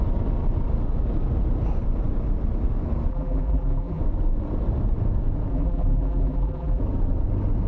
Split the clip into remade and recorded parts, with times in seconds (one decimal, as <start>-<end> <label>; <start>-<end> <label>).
0.0-3.1 recorded; 3.1-4.0 remade; 4.0-5.5 recorded; 5.5-6.8 remade; 6.8-7.7 recorded